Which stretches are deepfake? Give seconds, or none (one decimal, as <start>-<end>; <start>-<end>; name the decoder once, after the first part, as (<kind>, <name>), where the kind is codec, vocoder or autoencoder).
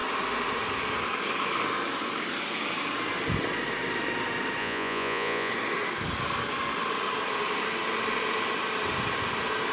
4.6-5.5 (vocoder, Vocos)